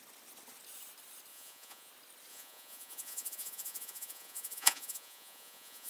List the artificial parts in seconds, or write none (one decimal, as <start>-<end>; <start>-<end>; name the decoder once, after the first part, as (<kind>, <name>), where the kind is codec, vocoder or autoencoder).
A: 1.3-1.9 (vocoder, Vocos); 2.3-5.9